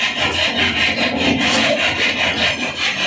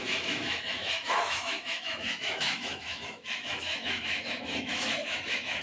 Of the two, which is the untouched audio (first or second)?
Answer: first